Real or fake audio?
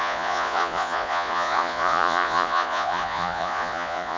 fake